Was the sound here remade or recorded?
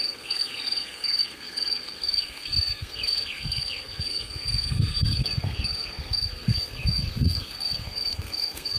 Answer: remade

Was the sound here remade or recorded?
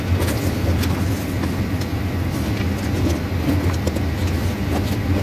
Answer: recorded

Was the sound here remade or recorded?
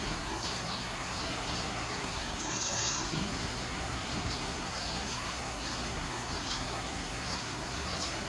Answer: remade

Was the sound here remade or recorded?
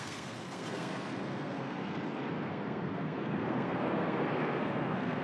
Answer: remade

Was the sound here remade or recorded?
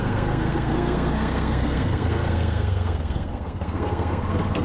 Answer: remade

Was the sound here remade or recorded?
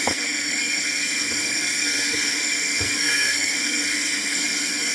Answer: remade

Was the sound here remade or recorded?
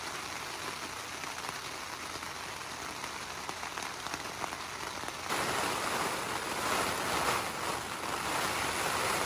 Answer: recorded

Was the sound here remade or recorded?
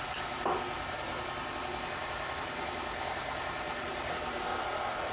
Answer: recorded